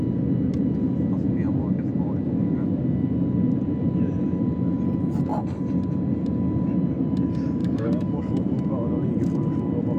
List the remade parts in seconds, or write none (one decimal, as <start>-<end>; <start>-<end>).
7.6-8.4